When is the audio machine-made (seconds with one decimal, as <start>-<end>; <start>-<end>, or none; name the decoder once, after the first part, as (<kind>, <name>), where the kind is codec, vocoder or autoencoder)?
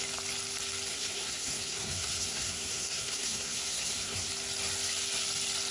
0.9-4.3 (codec, SNAC)